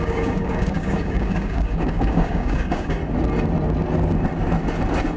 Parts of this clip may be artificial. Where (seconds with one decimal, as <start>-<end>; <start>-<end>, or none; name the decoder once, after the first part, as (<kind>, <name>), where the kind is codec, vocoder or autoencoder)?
0.0-3.0 (codec, DAC)